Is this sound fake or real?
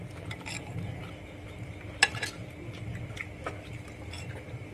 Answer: fake